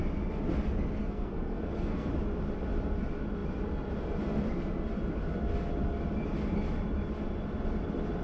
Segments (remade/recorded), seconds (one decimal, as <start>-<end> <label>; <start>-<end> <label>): 0.0-1.0 recorded; 1.0-2.1 remade; 2.1-8.2 recorded